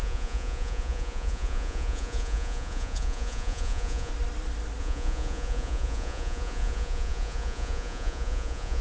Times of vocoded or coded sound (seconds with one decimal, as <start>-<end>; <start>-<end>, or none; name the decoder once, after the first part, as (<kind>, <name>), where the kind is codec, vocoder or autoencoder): 0.0-4.1 (vocoder, Vocos); 4.8-8.8